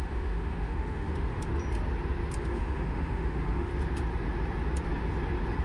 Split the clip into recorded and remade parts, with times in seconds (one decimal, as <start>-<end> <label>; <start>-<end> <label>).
0.0-1.5 remade; 1.5-2.4 recorded; 2.4-3.7 remade; 3.7-5.6 recorded